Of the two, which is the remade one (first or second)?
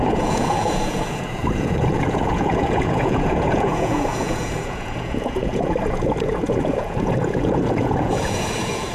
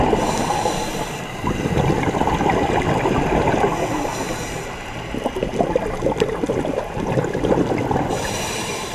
first